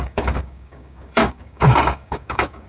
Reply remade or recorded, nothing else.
remade